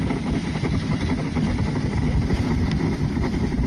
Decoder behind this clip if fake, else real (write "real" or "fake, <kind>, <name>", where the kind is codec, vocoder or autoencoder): real